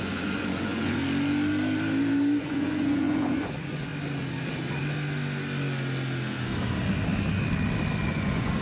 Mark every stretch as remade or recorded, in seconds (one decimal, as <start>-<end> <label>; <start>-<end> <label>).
0.0-1.0 remade; 1.0-2.4 recorded; 2.4-3.9 remade; 3.9-8.1 recorded; 8.1-8.6 remade